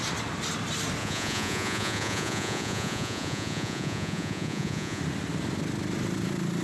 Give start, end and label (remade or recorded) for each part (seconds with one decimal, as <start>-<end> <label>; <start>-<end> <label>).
0.0-1.0 recorded; 1.0-5.0 remade; 5.0-6.6 recorded

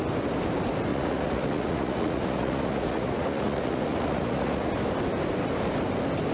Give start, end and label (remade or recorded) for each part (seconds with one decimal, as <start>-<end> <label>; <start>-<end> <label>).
0.0-0.9 recorded; 0.9-4.7 remade; 4.7-6.3 recorded